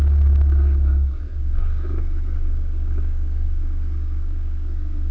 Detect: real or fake fake